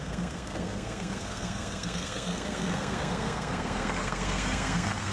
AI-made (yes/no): yes